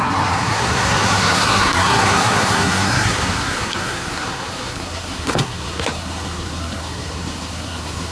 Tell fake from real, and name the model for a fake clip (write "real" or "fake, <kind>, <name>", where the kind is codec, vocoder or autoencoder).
fake, codec, SNAC